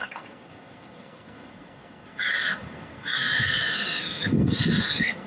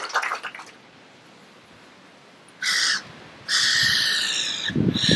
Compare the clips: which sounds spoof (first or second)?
first